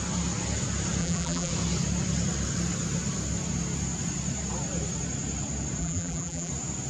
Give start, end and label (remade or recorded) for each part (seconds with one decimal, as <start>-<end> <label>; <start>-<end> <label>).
0.0-1.0 recorded; 1.0-1.5 remade; 1.5-5.8 recorded; 5.8-6.5 remade; 6.5-6.9 recorded